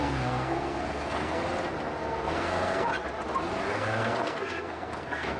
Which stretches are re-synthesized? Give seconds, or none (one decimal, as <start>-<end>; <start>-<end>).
0.0-1.4; 2.0-2.9; 3.7-5.4